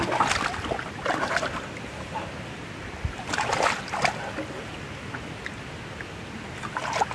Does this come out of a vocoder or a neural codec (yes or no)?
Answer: no